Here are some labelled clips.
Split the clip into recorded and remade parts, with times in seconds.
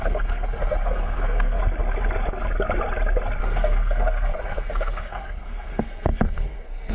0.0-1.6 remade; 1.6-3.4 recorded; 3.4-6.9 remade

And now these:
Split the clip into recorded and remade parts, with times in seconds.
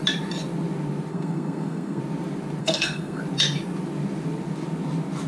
0.0-1.1 recorded; 1.1-2.0 remade; 2.0-2.6 recorded; 2.6-3.2 remade; 3.2-5.3 recorded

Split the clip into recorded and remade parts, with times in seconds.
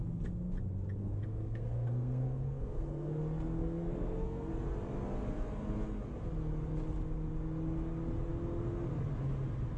0.0-1.0 recorded; 1.0-3.2 remade; 3.2-3.6 recorded; 3.6-4.5 remade; 4.5-9.8 recorded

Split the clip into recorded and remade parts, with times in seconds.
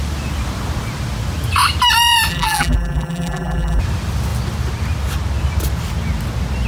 0.0-2.3 recorded; 2.3-3.8 remade; 3.8-6.7 recorded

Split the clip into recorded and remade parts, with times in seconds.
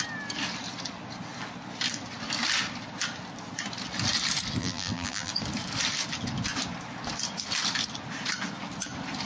0.0-4.6 recorded; 4.6-5.3 remade; 5.3-9.3 recorded